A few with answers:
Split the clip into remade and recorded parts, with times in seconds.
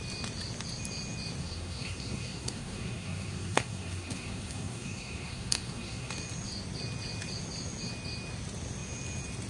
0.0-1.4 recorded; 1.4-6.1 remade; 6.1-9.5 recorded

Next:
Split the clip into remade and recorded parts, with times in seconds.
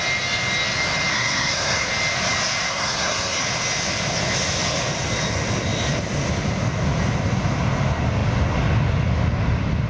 0.0-1.1 recorded; 1.1-1.9 remade; 1.9-2.7 recorded; 2.7-3.4 remade; 3.4-9.9 recorded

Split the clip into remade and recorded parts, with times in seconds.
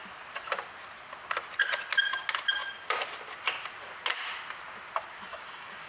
0.0-5.3 recorded; 5.3-5.9 remade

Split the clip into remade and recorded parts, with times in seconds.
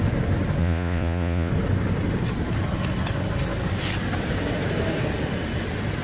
0.0-0.6 recorded; 0.6-1.5 remade; 1.5-6.0 recorded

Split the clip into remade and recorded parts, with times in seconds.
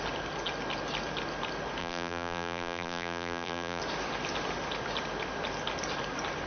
0.0-1.8 recorded; 1.8-3.8 remade; 3.8-6.5 recorded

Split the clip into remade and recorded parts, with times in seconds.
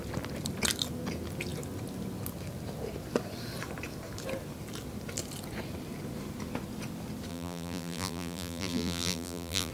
0.0-7.3 recorded; 7.3-9.7 remade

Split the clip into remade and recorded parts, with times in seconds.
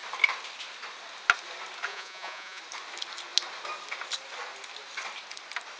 0.0-1.9 recorded; 1.9-2.6 remade; 2.6-5.8 recorded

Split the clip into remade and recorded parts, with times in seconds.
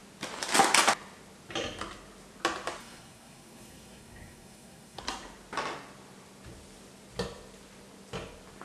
0.0-2.8 recorded; 2.8-5.0 remade; 5.0-8.6 recorded